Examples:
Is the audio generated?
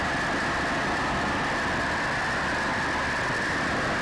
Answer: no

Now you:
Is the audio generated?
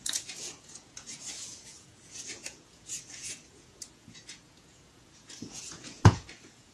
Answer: yes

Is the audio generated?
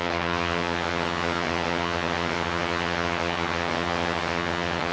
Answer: yes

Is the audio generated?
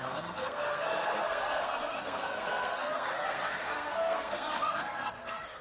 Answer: yes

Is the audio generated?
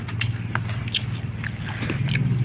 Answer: no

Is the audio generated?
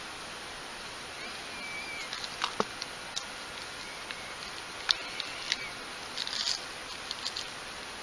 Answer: no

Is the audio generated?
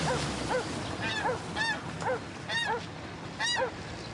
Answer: no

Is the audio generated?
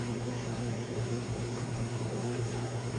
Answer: yes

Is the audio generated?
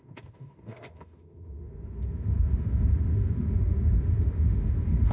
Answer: yes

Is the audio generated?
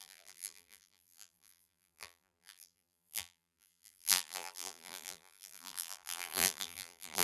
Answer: yes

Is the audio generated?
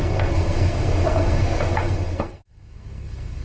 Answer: yes